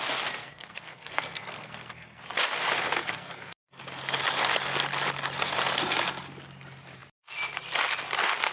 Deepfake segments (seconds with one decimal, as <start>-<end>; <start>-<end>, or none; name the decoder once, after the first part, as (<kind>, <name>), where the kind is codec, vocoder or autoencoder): 0.4-2.2 (codec, SNAC); 3.0-3.8